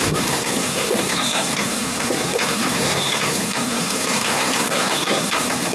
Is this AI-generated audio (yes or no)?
yes